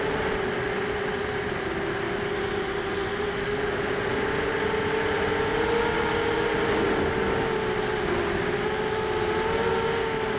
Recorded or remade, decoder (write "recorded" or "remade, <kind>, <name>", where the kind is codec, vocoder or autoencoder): recorded